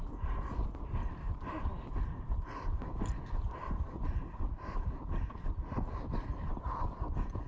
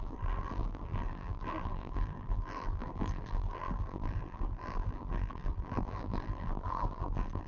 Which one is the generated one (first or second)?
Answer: second